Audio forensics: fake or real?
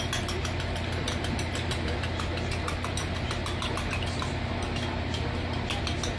real